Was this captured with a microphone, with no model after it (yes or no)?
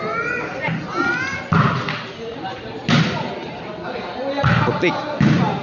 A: yes